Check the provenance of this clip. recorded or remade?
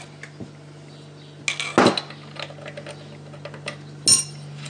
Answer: recorded